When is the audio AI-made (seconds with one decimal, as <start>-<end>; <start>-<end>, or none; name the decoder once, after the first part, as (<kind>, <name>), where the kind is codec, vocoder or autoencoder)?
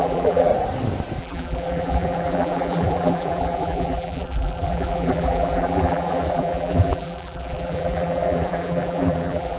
0.0-0.5 (vocoder, BigVGAN v2); 1.2-9.6